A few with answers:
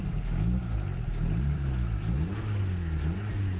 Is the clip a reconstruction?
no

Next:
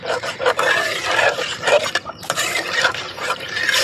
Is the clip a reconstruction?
yes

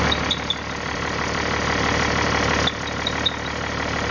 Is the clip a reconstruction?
no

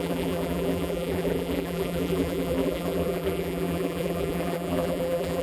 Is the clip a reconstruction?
yes